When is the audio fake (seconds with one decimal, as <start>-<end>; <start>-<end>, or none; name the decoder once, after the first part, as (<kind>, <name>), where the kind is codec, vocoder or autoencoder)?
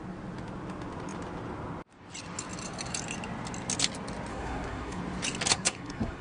4.3-5.0 (codec, SNAC); 5.5-6.2